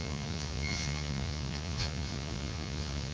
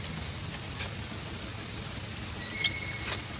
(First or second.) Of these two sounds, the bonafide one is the second